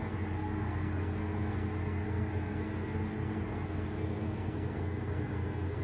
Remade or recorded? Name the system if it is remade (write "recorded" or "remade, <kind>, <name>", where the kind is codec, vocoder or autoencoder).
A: remade, codec, SNAC